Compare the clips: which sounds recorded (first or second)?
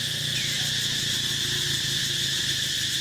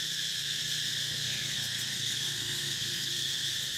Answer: first